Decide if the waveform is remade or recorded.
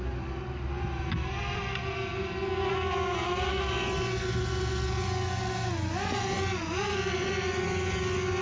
recorded